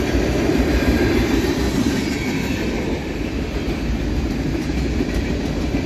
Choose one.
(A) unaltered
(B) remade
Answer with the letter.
A